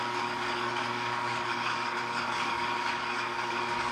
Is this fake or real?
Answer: fake